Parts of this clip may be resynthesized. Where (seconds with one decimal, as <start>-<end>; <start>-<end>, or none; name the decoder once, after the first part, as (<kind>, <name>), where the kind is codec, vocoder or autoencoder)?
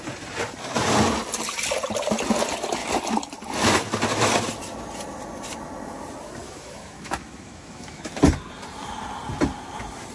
6.4-8.1 (autoencoder, DAC-VAE)